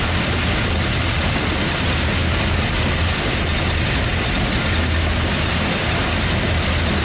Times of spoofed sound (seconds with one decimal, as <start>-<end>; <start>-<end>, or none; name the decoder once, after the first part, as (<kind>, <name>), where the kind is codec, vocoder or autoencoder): 2.2-3.0 (codec, DAC)